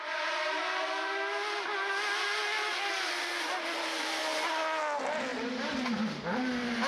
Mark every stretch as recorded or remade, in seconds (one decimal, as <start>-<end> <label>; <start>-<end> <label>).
0.0-6.9 recorded